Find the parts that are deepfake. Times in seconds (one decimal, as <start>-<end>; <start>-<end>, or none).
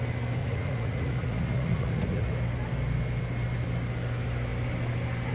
0.4-2.3